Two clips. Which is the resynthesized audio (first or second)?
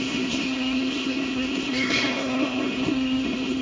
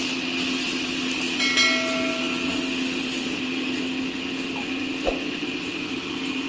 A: first